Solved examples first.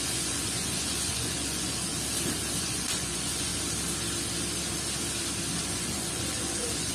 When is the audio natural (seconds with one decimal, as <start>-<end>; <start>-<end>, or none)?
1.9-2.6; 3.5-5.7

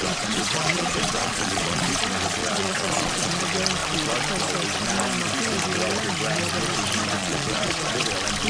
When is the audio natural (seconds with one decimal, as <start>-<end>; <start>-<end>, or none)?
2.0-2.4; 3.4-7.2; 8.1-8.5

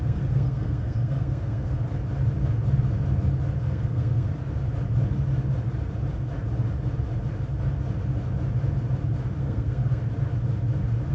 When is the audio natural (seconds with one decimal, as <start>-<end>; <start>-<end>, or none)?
1.8-3.6; 4.3-9.4; 10.0-11.1